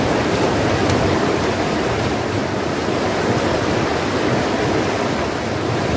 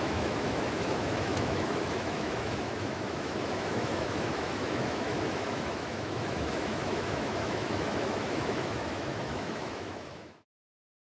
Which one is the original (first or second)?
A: first